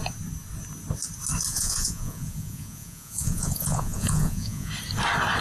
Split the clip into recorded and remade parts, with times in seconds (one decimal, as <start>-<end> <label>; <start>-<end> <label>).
0.0-1.5 recorded; 1.5-4.7 remade; 4.7-5.4 recorded